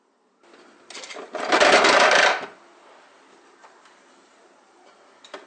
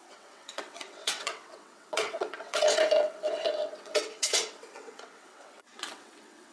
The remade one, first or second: second